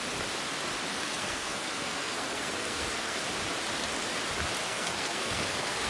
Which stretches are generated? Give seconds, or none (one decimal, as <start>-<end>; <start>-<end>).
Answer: 0.9-3.2; 4.6-5.9